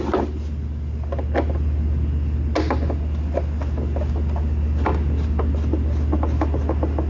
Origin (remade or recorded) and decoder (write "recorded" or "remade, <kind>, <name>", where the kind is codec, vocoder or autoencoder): recorded